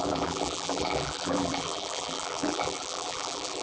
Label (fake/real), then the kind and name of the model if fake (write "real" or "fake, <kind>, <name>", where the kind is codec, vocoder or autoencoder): fake, vocoder, BigVGAN v2